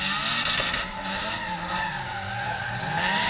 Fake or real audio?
real